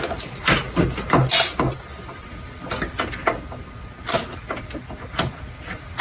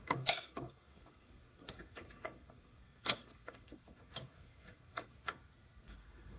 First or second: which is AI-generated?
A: second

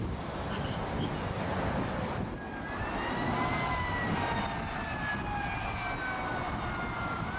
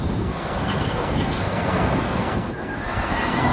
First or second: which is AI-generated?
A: second